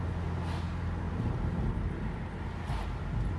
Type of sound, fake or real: real